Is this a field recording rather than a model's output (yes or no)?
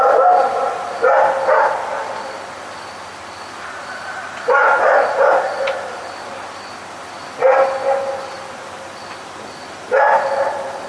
yes